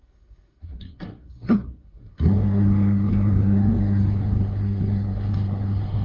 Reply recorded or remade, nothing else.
remade